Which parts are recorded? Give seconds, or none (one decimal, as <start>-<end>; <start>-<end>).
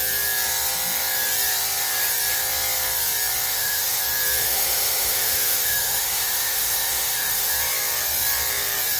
0.0-3.5; 4.0-4.4; 7.5-9.0